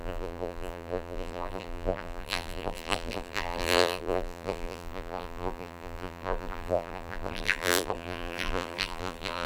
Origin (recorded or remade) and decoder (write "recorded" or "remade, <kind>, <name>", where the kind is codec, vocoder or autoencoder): remade, vocoder, BigVGAN v2